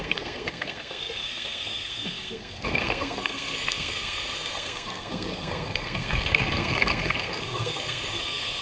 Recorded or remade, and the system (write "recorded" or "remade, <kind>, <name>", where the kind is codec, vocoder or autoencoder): remade, codec, SNAC